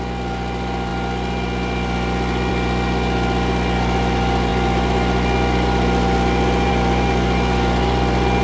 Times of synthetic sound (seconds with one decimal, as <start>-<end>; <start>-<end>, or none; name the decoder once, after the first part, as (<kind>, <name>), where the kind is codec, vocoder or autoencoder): none